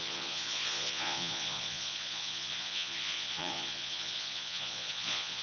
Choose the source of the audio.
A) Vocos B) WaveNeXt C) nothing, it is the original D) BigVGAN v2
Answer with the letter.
A